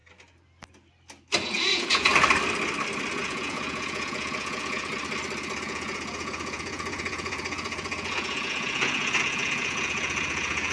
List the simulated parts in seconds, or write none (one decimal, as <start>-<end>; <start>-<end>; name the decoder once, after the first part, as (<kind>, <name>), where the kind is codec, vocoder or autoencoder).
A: 1.5-2.1 (vocoder, Vocos); 3.1-4.9; 5.6-10.7